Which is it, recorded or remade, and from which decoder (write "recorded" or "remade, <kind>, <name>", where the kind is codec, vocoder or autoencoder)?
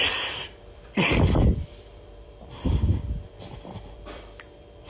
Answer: remade, vocoder, BigVGAN v2